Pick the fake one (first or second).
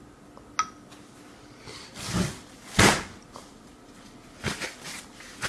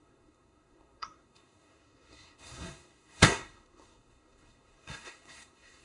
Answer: second